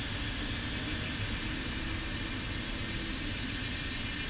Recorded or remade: recorded